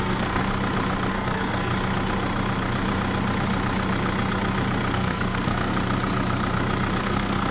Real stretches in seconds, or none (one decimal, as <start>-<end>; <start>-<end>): 0.4-1.1; 1.7-4.9; 5.7-7.0